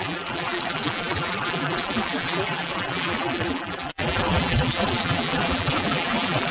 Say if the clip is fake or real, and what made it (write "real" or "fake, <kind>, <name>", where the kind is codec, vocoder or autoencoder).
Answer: fake, vocoder, BigVGAN v2